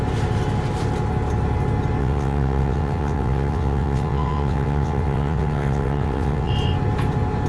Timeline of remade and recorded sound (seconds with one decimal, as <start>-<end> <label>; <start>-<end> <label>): 0.0-2.0 recorded; 2.0-6.5 remade; 6.5-7.5 recorded